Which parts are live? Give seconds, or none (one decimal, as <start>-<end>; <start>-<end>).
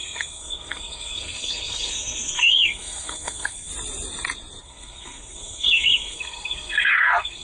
3.7-4.6